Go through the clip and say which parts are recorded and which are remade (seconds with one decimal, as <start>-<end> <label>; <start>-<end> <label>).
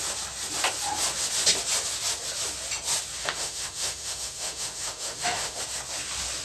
0.0-3.2 recorded; 3.2-5.6 remade; 5.6-6.4 recorded